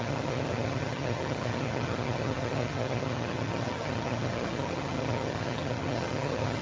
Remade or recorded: remade